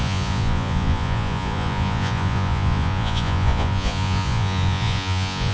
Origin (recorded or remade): remade